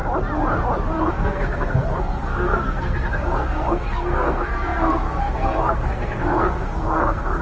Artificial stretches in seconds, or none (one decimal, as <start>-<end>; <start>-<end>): 1.1-7.4